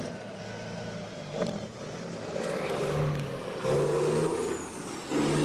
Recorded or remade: recorded